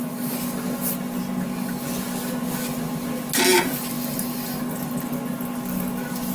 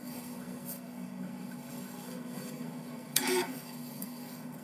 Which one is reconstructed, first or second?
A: second